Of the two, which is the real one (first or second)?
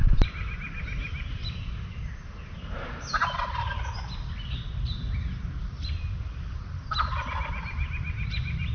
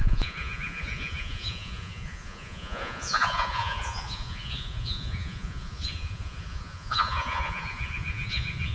first